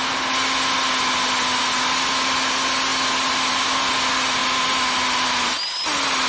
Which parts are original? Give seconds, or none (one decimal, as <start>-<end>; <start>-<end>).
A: 0.0-6.3